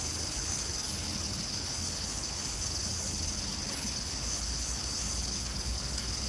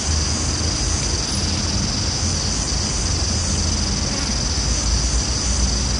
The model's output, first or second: first